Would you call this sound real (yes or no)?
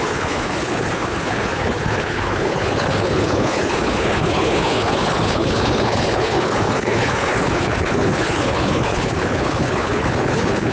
no